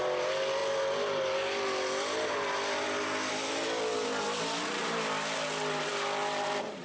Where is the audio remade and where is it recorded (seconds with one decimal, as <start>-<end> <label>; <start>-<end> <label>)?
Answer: 0.0-6.8 recorded